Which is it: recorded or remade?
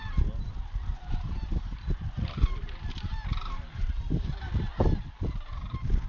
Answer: recorded